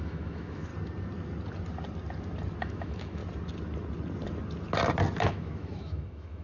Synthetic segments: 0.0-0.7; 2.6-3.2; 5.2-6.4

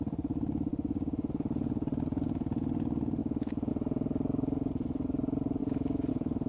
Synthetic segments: 3.2-3.7; 5.6-6.1

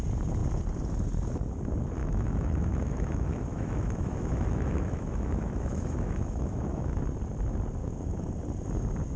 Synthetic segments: 2.0-7.0; 7.8-8.3

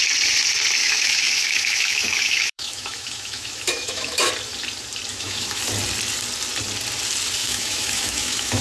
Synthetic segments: 0.8-4.3; 5.1-5.6; 7.4-8.6

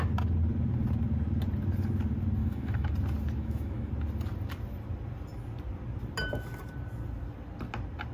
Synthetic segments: 2.4-2.9; 3.4-3.9

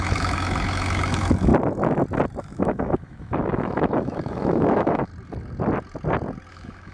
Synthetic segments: 0.0-1.5; 2.4-5.1; 6.5-6.9

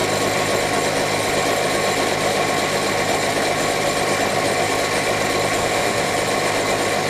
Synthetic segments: 5.6-6.1

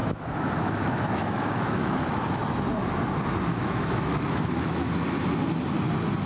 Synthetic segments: 0.0-2.3; 3.5-4.9